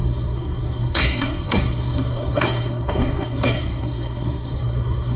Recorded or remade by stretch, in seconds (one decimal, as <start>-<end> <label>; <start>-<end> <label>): 0.0-5.2 remade